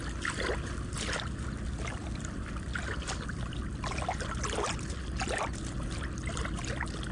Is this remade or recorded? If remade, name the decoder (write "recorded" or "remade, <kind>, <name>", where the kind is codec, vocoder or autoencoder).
recorded